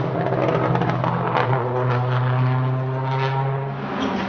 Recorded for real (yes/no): yes